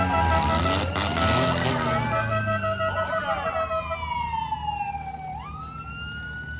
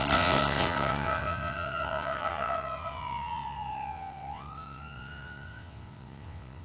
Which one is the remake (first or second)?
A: second